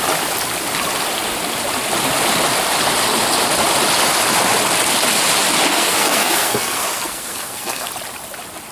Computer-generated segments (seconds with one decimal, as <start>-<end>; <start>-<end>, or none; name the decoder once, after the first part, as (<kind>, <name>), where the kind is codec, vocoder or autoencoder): 5.7-7.9 (codec, SNAC)